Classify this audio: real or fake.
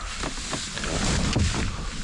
real